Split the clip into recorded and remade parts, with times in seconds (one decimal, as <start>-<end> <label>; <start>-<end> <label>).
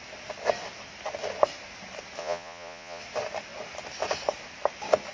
0.0-2.2 recorded; 2.2-3.0 remade; 3.0-5.1 recorded